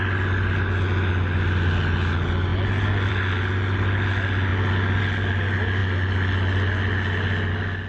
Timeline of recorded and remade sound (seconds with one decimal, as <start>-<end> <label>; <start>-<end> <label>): 0.0-7.9 recorded